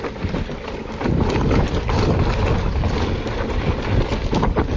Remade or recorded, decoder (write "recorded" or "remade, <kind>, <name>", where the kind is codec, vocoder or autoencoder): recorded